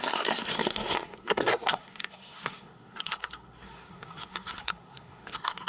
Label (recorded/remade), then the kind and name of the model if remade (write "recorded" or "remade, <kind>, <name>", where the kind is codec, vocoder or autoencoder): remade, codec, SNAC